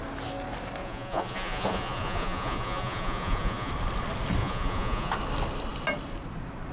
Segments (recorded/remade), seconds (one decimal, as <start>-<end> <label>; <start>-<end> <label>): 0.0-0.8 recorded; 0.8-3.7 remade; 3.7-4.4 recorded; 4.4-5.1 remade; 5.1-6.7 recorded